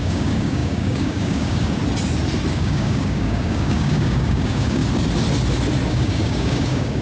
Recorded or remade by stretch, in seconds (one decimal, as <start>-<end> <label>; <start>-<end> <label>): 0.0-1.8 remade; 1.8-2.5 recorded; 2.5-4.8 remade; 4.8-5.9 recorded; 5.9-7.0 remade

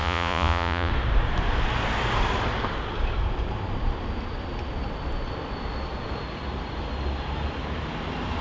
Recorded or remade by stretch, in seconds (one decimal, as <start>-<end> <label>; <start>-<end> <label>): 0.0-0.9 remade; 0.9-8.4 recorded

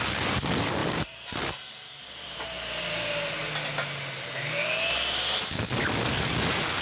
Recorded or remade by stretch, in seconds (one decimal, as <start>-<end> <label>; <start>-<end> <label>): 0.0-0.8 recorded; 0.8-2.4 remade; 2.4-6.8 recorded

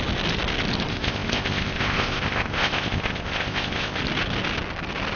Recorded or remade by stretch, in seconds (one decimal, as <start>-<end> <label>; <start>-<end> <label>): 0.0-0.9 recorded; 0.9-4.0 remade; 4.0-5.2 recorded

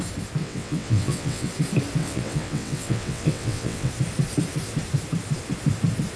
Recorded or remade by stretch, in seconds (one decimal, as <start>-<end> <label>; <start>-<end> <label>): 0.0-0.4 recorded; 0.4-1.5 remade; 1.5-2.0 recorded; 2.0-3.9 remade; 3.9-6.2 recorded

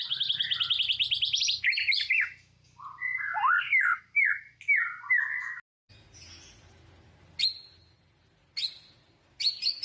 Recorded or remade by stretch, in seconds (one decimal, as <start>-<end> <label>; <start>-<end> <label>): 0.0-9.8 recorded

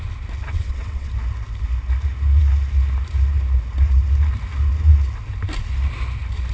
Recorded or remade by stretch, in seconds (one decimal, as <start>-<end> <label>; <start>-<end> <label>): 0.0-0.5 recorded; 0.5-1.1 remade; 1.1-6.5 recorded

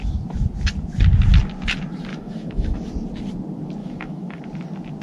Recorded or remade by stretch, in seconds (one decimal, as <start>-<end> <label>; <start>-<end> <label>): 0.0-2.1 recorded; 2.1-2.9 remade; 2.9-3.8 recorded; 3.8-4.4 remade; 4.4-5.0 recorded